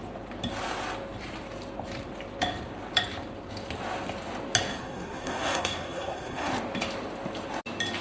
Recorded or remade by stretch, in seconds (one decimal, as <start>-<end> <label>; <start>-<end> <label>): 0.0-4.7 recorded; 4.7-6.5 remade; 6.5-8.0 recorded